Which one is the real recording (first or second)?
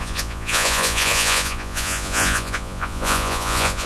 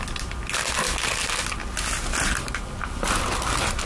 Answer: second